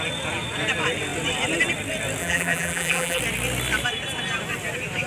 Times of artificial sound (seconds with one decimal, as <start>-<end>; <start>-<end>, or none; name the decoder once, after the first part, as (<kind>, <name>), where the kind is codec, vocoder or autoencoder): 2.2-3.2 (vocoder, BigVGAN v2)